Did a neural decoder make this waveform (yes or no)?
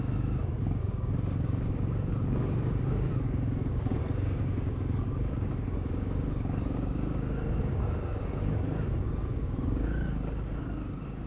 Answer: yes